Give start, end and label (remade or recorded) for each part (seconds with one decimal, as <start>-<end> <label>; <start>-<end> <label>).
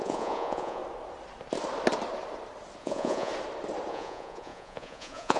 0.0-0.8 remade; 0.8-2.8 recorded; 2.8-3.3 remade; 3.3-3.9 recorded; 3.9-5.4 remade